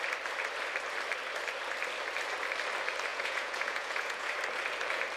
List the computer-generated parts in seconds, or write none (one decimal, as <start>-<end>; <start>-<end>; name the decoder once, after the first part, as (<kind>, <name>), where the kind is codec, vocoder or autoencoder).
3.1-4.3 (vocoder, Vocos)